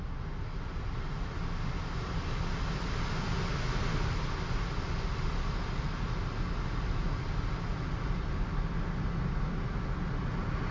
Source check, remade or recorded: recorded